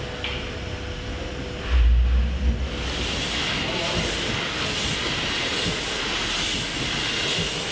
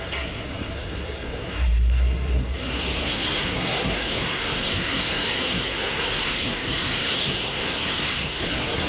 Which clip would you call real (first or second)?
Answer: first